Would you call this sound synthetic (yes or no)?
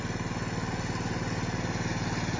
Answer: no